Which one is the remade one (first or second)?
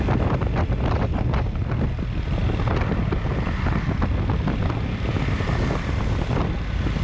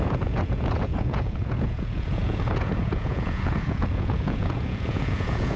second